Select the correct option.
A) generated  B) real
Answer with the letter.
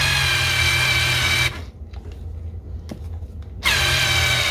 B